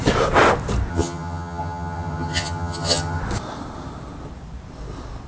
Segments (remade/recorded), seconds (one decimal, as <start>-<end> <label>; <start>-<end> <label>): 0.0-0.9 recorded; 0.9-3.2 remade; 3.2-5.3 recorded